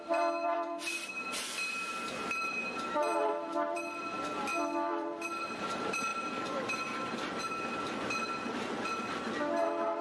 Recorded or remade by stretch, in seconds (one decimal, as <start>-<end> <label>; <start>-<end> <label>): 0.0-10.0 remade